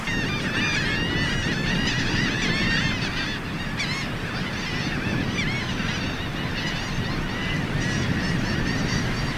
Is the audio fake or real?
real